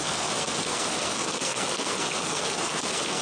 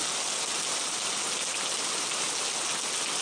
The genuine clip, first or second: second